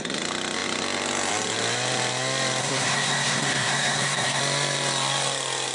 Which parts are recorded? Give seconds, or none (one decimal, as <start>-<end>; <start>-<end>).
0.0-2.6; 4.4-5.7